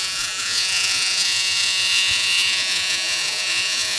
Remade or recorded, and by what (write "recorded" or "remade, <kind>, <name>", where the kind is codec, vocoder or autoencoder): remade, vocoder, Vocos